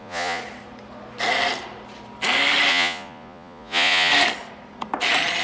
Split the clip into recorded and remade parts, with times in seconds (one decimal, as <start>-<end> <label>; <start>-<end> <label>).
0.0-0.4 remade; 0.4-2.7 recorded; 2.7-4.1 remade; 4.1-5.4 recorded